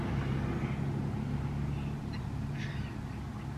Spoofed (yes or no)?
no